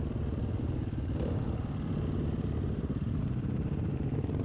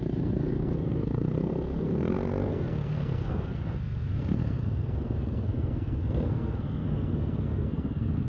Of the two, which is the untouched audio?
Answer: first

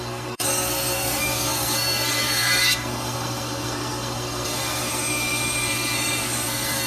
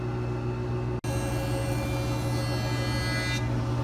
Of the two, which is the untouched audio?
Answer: second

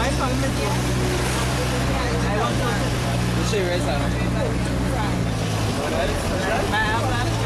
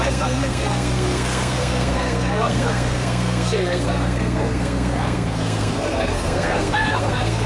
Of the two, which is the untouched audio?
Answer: first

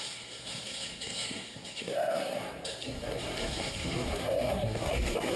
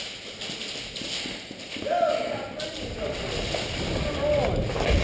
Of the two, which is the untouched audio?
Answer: second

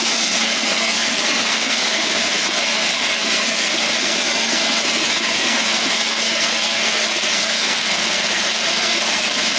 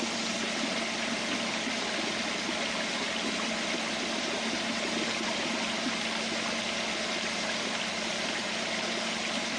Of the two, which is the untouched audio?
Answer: second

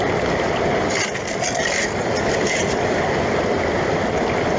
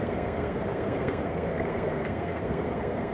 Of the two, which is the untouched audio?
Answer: first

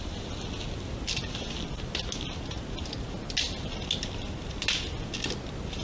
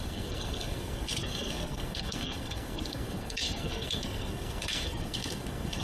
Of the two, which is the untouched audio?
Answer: first